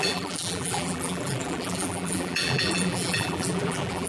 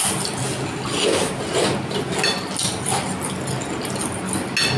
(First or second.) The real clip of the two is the second